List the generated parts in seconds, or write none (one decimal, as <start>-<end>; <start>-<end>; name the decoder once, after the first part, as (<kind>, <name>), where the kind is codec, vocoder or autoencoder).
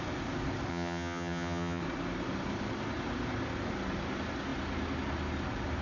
0.7-1.8 (vocoder, HiFi-GAN)